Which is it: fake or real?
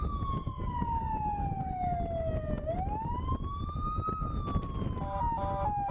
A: real